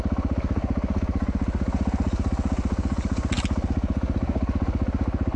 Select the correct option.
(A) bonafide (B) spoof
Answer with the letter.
A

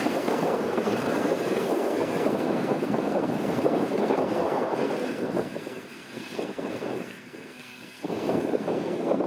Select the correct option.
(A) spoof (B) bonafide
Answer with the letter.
A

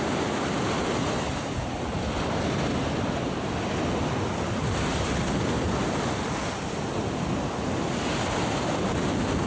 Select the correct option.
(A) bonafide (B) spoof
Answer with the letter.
A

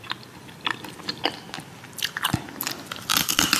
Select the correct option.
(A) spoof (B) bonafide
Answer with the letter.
B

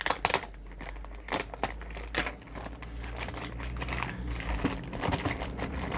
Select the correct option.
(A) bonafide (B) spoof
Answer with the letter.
A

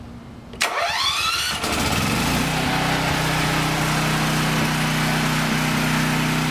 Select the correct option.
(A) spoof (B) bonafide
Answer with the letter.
B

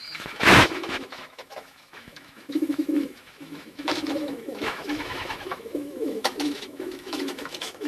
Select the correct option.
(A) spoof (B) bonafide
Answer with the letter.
A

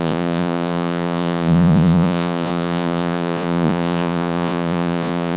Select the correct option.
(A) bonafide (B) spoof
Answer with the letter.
B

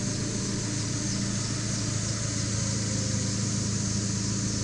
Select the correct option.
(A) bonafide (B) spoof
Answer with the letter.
A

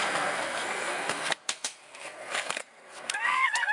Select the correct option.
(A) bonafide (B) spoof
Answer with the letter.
B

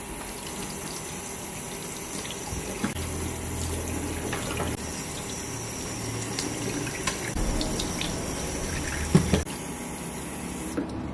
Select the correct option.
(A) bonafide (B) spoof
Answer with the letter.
A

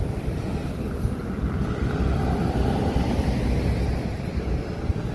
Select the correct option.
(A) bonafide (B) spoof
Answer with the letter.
A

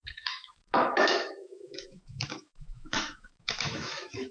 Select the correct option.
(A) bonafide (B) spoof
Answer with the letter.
B